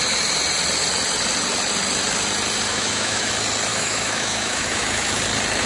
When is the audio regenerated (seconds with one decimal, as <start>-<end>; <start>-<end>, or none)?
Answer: 2.7-3.3; 3.7-5.2